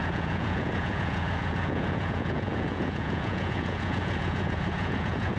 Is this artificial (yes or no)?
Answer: yes